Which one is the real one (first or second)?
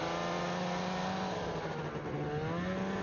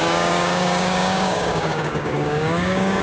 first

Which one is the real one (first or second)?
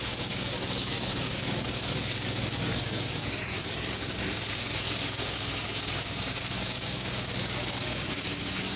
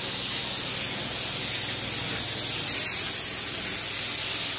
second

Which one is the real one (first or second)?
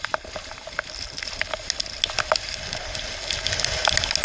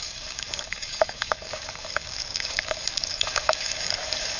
first